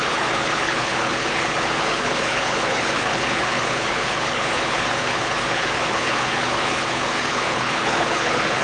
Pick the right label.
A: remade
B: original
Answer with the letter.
A